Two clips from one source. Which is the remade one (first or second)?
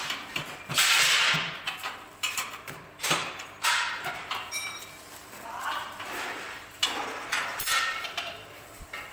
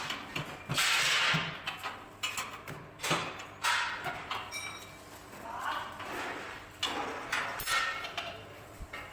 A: first